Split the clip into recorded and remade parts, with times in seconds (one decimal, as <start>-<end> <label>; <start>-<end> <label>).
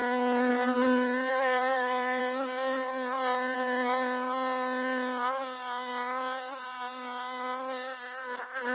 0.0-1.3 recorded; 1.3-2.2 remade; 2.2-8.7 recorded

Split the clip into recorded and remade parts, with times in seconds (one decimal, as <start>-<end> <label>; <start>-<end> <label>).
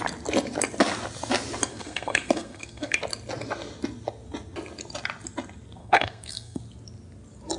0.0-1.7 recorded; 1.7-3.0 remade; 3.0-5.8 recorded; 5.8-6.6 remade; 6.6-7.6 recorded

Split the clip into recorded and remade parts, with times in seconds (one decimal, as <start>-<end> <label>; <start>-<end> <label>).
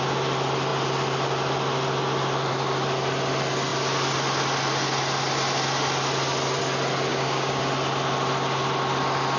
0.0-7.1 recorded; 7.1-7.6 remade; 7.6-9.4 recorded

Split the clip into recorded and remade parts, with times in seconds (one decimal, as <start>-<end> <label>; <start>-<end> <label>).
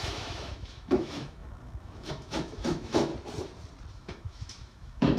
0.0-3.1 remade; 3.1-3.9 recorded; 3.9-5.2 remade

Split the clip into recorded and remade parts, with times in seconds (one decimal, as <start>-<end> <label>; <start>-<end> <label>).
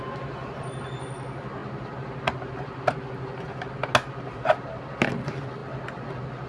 0.0-6.5 recorded